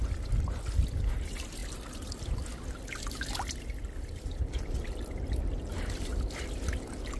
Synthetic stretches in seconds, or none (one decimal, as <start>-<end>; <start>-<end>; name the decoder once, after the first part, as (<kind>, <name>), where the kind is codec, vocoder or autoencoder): none